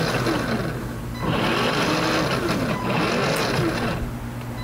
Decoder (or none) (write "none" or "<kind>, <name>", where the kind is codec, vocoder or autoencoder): none